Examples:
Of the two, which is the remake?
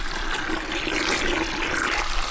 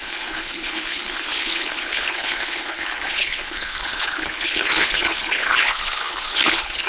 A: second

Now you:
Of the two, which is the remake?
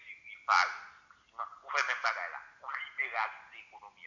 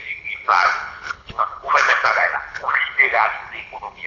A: second